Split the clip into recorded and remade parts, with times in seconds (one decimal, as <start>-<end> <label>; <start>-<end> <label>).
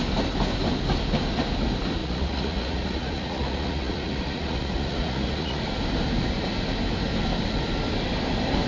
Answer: 0.0-2.0 recorded; 2.0-5.6 remade; 5.6-8.7 recorded